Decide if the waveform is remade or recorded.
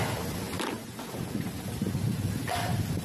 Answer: recorded